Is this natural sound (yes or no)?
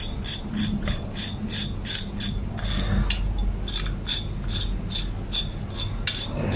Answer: yes